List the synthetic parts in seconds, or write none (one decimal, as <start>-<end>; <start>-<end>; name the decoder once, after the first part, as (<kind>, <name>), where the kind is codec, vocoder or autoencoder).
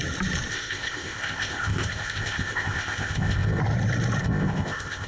0.5-3.6 (codec, ZipCodec); 4.2-5.1